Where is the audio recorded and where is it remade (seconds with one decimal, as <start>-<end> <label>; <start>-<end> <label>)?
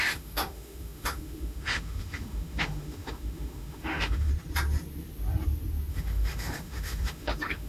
0.0-4.3 remade; 4.3-5.9 recorded; 5.9-7.7 remade